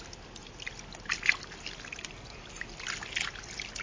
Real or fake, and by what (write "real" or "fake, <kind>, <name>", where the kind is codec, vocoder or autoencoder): real